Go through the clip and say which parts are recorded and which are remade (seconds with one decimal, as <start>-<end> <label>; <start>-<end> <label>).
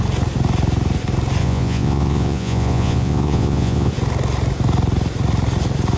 0.0-1.4 recorded; 1.4-3.9 remade; 3.9-6.0 recorded